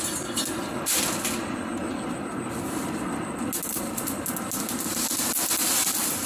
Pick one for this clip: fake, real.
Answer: real